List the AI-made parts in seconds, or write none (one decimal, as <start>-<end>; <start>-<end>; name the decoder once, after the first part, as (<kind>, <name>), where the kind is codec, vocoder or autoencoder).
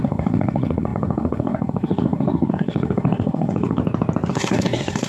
0.0-3.8 (codec, SNAC); 4.3-5.1